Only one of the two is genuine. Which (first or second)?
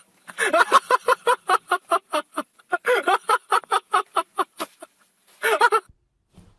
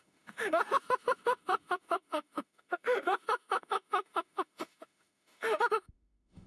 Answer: first